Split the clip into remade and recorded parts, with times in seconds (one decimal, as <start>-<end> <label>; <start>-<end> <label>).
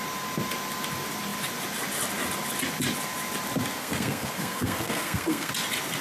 0.0-3.8 recorded; 3.8-5.5 remade; 5.5-6.0 recorded